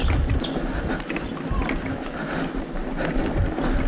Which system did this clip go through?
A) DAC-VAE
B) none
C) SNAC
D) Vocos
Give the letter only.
B